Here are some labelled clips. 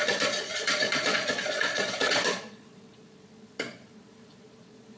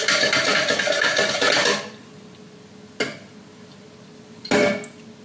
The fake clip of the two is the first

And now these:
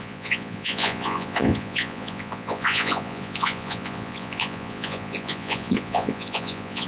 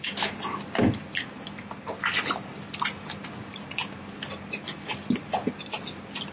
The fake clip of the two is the first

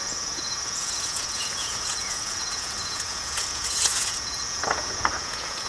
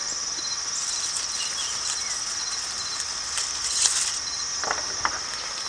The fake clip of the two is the first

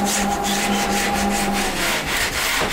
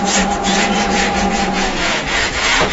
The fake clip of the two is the second